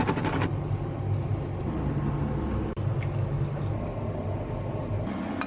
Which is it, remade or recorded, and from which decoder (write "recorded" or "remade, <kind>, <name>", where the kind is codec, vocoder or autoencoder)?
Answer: recorded